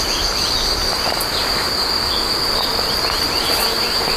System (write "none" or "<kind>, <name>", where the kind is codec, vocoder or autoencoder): none